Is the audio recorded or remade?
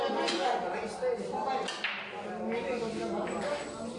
recorded